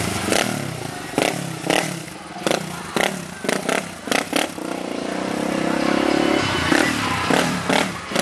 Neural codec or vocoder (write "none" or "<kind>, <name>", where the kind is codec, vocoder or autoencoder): none